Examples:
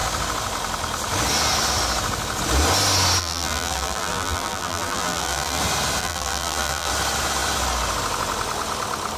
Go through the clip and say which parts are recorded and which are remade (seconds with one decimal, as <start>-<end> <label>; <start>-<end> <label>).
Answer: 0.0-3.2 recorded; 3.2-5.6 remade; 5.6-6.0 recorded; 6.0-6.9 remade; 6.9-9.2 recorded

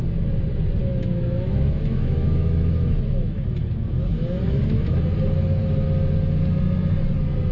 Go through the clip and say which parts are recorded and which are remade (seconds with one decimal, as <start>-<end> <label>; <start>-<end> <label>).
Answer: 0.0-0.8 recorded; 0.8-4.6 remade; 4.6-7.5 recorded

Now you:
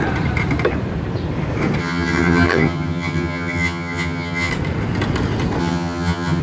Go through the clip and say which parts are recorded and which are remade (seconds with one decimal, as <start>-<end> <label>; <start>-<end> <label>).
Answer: 0.0-1.8 recorded; 1.8-4.5 remade; 4.5-5.6 recorded; 5.6-6.4 remade

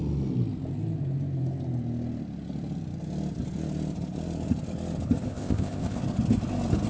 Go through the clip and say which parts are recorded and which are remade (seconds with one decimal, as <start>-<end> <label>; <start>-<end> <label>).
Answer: 0.0-5.3 recorded; 5.3-6.0 remade; 6.0-6.9 recorded

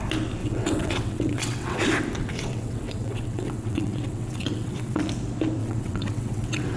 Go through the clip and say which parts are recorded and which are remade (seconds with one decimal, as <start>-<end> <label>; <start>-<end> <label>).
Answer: 0.0-0.4 recorded; 0.4-1.8 remade; 1.8-2.2 recorded; 2.2-5.0 remade; 5.0-5.6 recorded; 5.6-6.8 remade